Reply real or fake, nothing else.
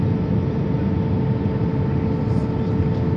real